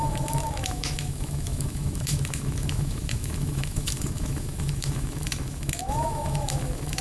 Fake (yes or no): yes